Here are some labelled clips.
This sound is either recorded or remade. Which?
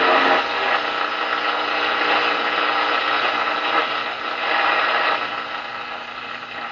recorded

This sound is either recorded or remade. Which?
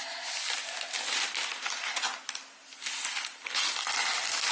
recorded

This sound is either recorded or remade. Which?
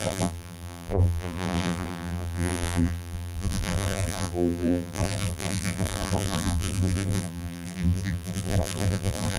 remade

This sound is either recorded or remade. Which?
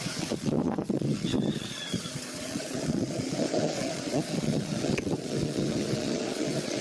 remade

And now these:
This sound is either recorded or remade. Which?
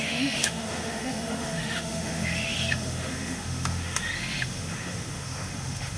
remade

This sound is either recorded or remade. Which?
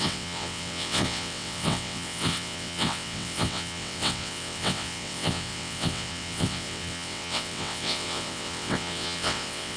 remade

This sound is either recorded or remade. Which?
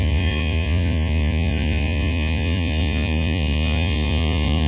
remade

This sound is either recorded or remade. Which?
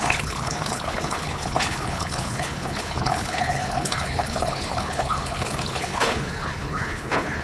remade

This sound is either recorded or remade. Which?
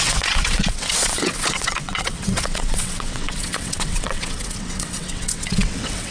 remade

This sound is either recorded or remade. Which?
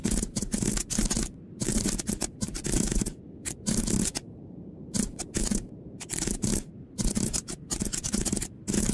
remade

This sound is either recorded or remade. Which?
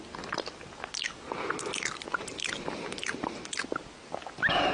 recorded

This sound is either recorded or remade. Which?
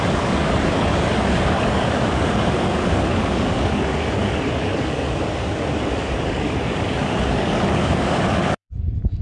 remade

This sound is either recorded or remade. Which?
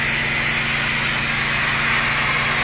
recorded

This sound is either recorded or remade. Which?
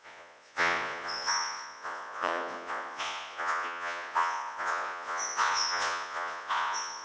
remade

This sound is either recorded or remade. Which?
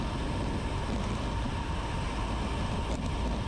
recorded